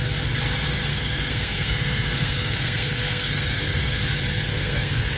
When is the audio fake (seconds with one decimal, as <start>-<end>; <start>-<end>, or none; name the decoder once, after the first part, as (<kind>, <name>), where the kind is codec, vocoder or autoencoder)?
0.9-4.0 (codec, SNAC); 4.5-5.2